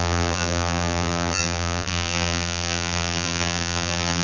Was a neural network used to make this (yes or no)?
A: yes